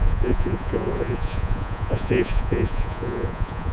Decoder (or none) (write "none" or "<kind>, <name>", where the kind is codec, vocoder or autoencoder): vocoder, Vocos